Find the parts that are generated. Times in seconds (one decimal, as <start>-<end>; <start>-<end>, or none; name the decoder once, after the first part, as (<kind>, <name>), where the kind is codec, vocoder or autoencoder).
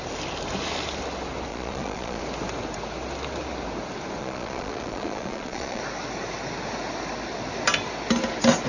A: 1.5-2.2 (vocoder, Vocos); 4.2-5.8